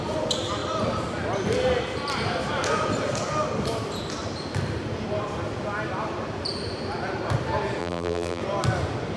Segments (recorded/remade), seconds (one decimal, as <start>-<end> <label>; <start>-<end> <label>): 0.0-7.8 recorded; 7.8-8.4 remade; 8.4-9.2 recorded